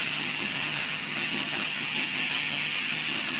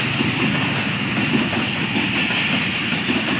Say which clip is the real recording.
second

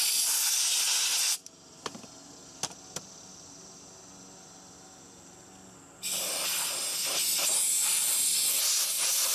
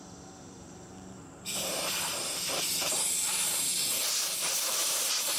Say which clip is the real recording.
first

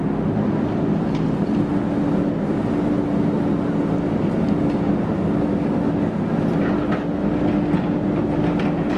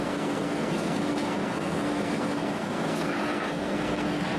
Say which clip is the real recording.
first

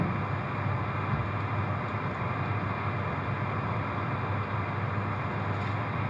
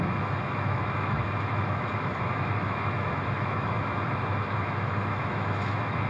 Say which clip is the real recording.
first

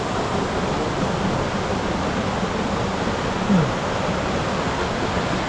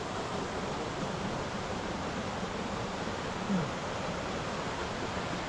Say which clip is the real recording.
first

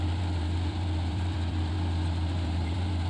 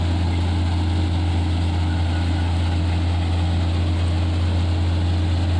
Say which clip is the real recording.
second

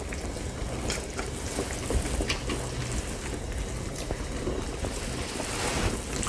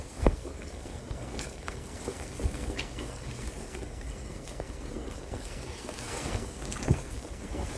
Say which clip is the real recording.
first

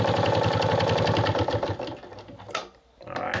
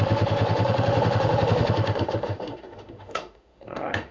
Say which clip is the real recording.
first